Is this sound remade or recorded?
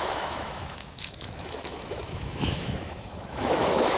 remade